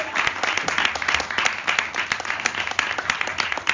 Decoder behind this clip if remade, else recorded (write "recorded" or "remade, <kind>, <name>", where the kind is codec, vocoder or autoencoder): recorded